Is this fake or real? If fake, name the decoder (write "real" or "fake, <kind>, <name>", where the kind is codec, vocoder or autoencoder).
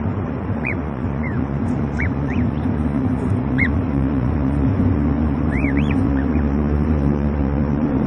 fake, vocoder, Vocos